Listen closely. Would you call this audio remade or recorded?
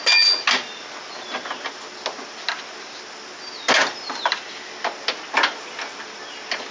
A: recorded